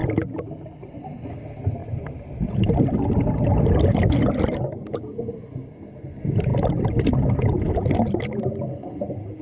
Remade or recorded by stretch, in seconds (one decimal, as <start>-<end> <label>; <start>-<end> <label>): 0.0-9.4 recorded